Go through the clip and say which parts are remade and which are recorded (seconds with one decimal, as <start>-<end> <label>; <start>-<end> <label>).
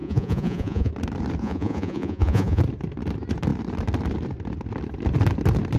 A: 0.0-0.9 remade; 0.9-1.4 recorded; 1.4-2.6 remade; 2.6-5.8 recorded